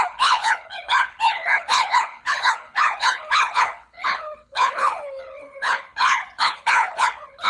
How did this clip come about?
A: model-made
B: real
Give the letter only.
A